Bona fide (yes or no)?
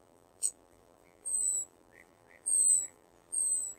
no